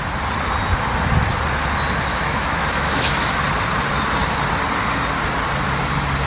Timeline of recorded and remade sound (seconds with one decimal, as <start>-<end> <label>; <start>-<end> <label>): 0.0-2.1 recorded; 2.1-3.3 remade; 3.3-6.3 recorded